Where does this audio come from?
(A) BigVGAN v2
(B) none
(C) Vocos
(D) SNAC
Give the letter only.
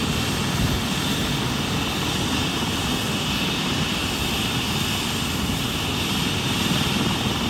B